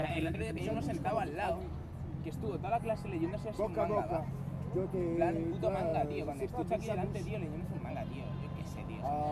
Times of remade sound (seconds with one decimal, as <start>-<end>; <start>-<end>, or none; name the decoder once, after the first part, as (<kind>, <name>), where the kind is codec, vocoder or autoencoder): 0.0-0.6 (codec, SNAC)